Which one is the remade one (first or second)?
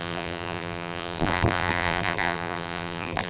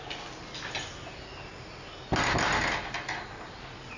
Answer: first